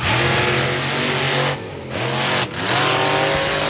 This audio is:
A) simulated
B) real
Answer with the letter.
B